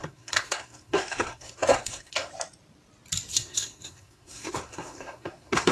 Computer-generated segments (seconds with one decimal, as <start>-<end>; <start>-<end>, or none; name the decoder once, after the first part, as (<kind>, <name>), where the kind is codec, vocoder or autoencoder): 0.0-2.3 (codec, SNAC); 3.3-5.7